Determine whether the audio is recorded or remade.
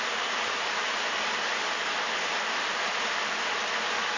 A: recorded